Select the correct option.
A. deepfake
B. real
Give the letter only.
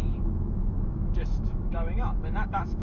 A